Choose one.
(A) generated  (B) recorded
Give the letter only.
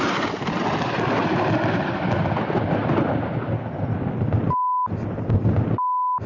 B